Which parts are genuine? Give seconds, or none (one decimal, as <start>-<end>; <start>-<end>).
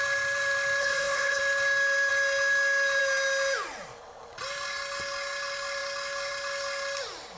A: 0.0-0.8; 1.4-7.4